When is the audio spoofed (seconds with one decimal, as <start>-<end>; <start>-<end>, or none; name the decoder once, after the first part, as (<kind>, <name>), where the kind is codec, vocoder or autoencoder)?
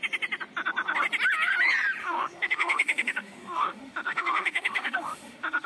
2.0-5.7 (autoencoder, DAC-VAE)